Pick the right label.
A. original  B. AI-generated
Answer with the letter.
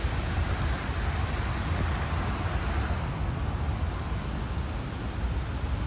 A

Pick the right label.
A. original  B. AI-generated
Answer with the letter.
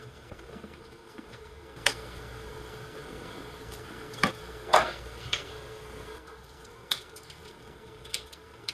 B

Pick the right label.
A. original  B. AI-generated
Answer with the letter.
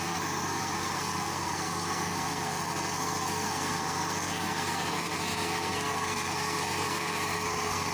B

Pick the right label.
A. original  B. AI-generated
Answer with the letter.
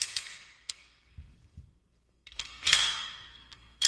B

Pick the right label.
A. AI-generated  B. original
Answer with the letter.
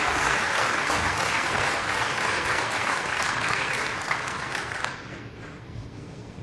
A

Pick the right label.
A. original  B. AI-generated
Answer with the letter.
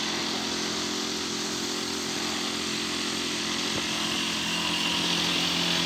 A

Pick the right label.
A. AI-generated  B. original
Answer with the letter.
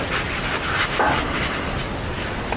B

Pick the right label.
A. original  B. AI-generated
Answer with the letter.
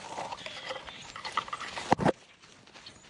A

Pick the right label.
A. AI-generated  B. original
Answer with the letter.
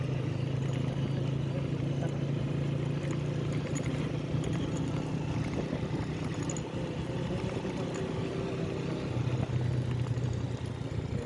B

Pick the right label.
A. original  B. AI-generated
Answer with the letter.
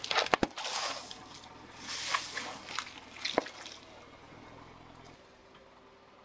A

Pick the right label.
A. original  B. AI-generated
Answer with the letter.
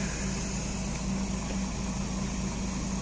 A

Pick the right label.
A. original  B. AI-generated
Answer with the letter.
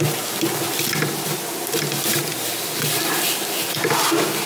A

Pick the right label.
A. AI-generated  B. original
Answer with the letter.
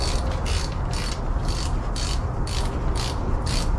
B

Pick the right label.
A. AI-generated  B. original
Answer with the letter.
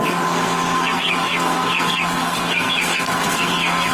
A